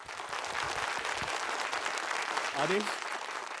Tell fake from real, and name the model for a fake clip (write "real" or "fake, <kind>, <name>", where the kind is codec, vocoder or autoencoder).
real